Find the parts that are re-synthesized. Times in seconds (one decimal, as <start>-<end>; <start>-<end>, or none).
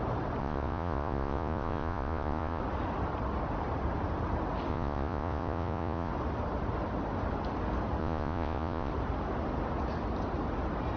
0.4-2.6; 4.7-6.1; 8.0-8.9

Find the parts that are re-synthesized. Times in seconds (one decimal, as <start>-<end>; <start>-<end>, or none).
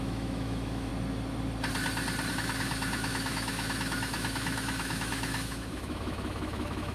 0.0-0.9; 2.3-6.9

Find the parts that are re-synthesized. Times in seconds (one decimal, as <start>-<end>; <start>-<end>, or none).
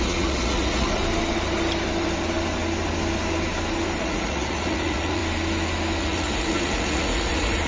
0.0-1.0; 4.0-5.2; 6.0-7.7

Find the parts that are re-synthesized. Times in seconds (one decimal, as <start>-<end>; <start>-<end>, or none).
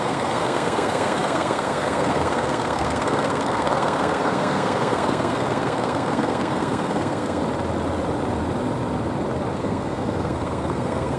0.0-7.4; 9.5-11.2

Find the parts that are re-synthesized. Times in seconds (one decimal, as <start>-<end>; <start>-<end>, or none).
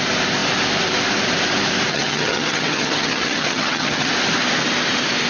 1.9-4.1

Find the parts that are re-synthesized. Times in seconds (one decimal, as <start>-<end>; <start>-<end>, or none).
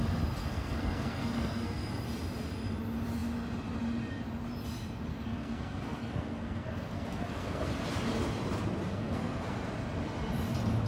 0.4-1.9; 5.1-7.7; 8.9-9.7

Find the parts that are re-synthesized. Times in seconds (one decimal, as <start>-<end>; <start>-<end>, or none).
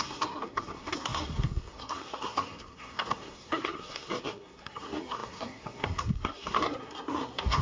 0.0-7.6